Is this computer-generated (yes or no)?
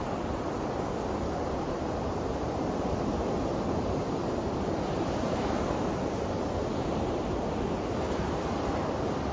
no